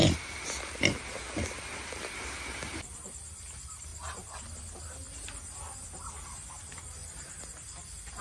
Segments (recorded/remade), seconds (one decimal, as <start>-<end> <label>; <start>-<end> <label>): 0.0-3.9 recorded; 3.9-4.5 remade; 4.5-8.2 recorded